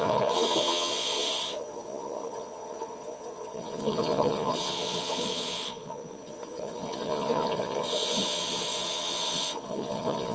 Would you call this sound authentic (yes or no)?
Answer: no